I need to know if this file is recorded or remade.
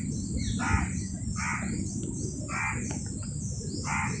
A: recorded